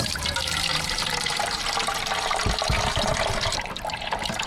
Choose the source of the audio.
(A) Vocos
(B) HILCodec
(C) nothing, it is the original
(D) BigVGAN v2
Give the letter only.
D